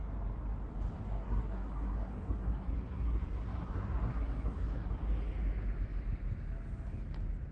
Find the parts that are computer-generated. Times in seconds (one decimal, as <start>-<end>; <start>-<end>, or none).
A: 1.0-4.9